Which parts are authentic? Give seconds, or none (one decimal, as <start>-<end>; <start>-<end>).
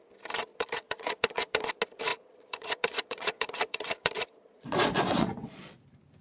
0.0-0.5; 1.7-2.1; 5.8-6.2